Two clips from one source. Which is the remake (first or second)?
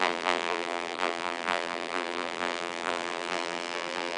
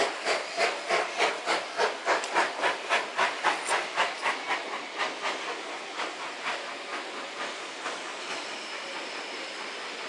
first